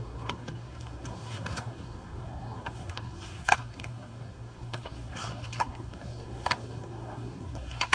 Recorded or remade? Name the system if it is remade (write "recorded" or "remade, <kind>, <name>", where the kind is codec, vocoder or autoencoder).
remade, codec, SNAC